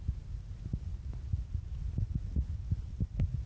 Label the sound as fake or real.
real